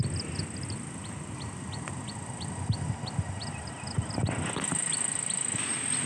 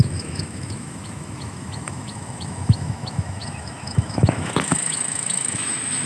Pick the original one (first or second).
first